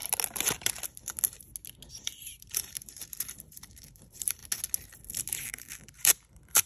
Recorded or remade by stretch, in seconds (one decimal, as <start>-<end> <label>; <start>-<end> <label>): 0.0-1.9 recorded; 1.9-4.4 remade; 4.4-5.3 recorded; 5.3-6.7 remade

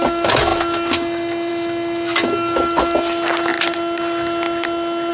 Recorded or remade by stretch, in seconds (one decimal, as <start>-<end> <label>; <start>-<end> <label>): 0.0-5.1 recorded

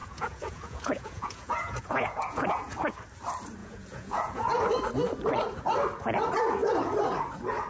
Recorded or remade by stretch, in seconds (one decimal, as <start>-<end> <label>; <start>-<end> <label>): 0.0-2.9 remade; 2.9-3.6 recorded; 3.6-4.6 remade; 4.6-7.7 recorded